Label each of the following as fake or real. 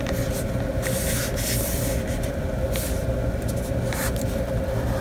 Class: real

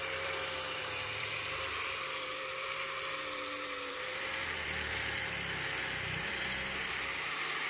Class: fake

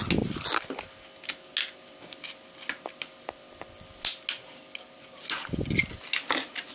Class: real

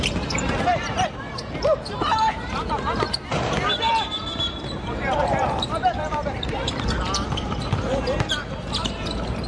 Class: fake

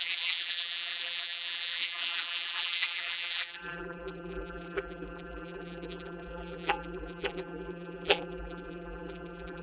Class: fake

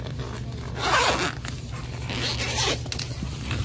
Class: real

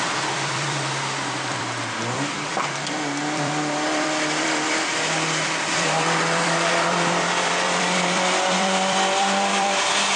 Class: fake